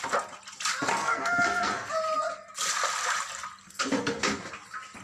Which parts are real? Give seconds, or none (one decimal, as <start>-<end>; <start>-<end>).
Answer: 0.0-0.9; 1.9-3.6; 4.2-5.0